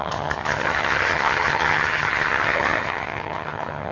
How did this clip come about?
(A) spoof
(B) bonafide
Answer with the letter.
A